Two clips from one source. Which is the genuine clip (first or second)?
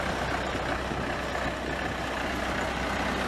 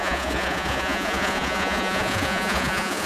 first